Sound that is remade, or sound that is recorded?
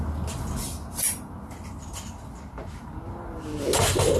recorded